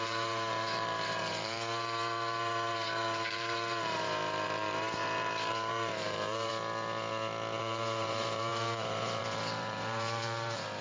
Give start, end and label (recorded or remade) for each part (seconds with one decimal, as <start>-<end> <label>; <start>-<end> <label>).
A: 0.0-6.5 remade; 6.5-7.6 recorded; 7.6-10.8 remade